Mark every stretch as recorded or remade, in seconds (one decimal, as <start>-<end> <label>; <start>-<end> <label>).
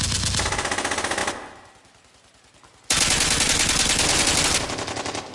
0.0-5.3 recorded